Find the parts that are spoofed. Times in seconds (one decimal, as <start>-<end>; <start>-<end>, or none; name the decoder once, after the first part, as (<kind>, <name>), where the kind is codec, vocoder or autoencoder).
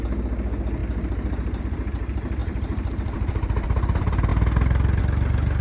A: 0.0-0.8 (vocoder, BigVGAN v2); 1.6-5.6